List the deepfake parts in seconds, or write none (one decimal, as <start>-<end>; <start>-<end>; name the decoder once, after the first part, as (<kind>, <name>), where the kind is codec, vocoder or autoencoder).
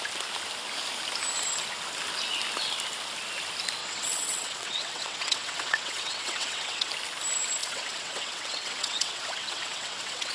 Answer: 3.8-6.9 (vocoder, WaveNeXt); 7.6-10.3